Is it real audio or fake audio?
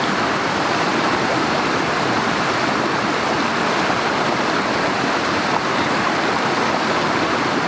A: fake